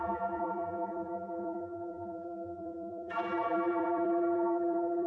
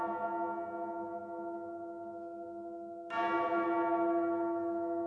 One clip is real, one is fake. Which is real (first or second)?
second